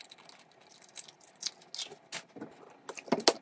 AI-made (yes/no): no